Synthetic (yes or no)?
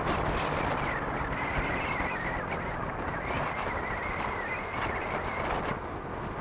no